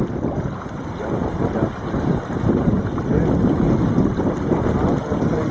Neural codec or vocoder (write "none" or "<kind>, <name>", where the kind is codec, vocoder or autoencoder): none